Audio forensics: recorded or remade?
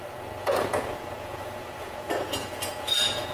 remade